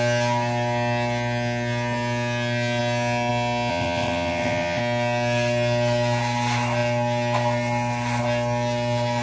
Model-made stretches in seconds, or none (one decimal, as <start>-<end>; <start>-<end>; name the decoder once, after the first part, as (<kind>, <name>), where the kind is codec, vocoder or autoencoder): 3.7-4.8 (vocoder, WaveNeXt)